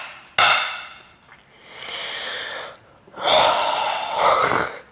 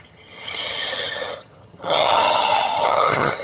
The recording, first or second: first